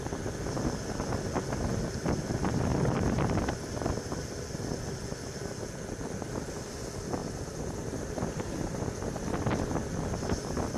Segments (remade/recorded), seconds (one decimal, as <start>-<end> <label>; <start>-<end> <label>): 0.0-7.2 recorded; 7.2-9.6 remade; 9.6-10.8 recorded